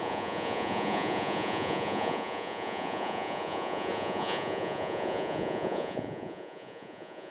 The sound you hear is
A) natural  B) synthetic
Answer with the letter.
B